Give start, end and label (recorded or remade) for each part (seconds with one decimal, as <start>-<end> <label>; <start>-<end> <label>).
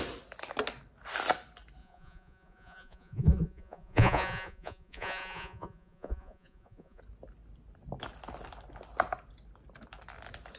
0.0-1.8 recorded; 1.8-7.0 remade; 7.0-10.6 recorded